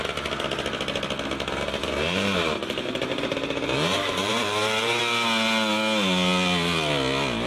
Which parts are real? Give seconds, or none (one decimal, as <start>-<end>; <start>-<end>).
0.0-1.8; 5.0-7.5